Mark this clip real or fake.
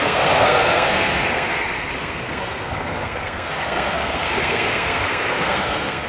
fake